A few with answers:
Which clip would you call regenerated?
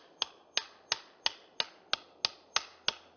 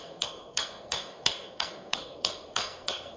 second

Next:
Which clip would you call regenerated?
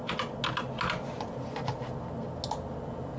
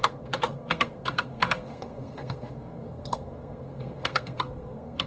second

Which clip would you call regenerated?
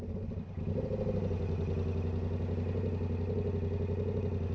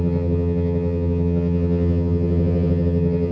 second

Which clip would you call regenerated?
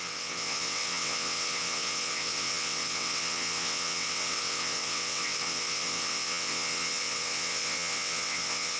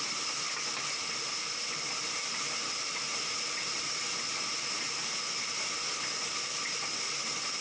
first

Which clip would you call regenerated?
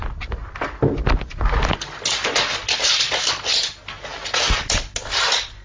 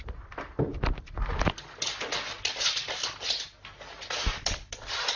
second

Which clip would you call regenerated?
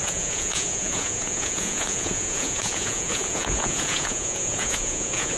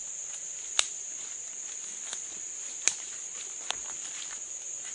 first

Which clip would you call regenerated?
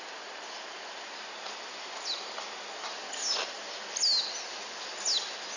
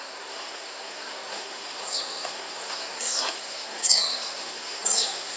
second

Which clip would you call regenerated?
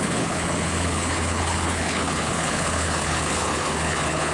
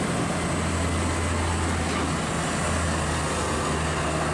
first